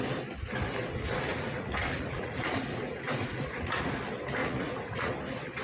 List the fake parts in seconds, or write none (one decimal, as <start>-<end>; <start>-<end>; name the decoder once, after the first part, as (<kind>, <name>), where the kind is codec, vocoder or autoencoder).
1.3-3.9 (vocoder, Vocos); 4.4-5.1